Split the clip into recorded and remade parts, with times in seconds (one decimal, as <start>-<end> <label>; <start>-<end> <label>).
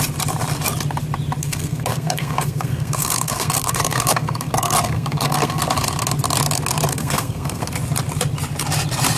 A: 0.0-1.4 recorded; 1.4-5.6 remade; 5.6-6.9 recorded; 6.9-7.7 remade; 7.7-9.2 recorded